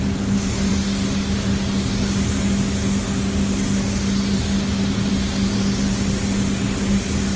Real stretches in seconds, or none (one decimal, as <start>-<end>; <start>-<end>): 0.0-7.4